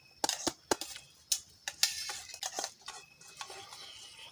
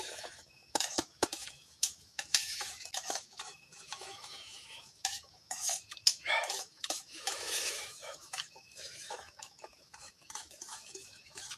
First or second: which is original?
first